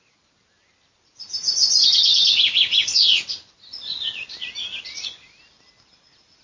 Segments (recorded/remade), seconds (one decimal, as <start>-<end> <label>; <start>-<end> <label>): 0.0-6.4 recorded